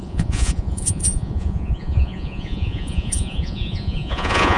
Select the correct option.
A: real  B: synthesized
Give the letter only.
B